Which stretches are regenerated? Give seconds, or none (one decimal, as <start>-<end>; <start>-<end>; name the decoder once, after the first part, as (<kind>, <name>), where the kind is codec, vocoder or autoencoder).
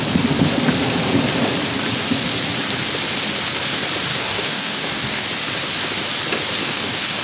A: 4.1-5.2 (codec, DAC); 6.6-7.2